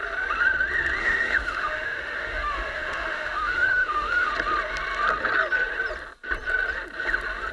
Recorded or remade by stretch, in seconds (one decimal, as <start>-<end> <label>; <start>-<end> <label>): 0.0-1.0 recorded; 1.0-4.3 remade; 4.3-7.5 recorded